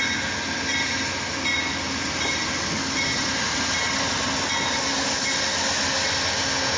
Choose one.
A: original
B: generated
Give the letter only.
A